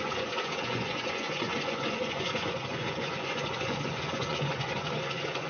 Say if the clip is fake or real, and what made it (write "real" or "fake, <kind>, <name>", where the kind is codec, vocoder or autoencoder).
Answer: fake, vocoder, Vocos